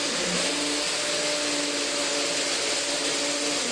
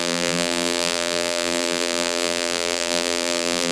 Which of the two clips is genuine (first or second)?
first